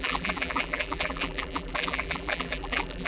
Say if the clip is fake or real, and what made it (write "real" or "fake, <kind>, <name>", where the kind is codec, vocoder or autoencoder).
fake, vocoder, BigVGAN v2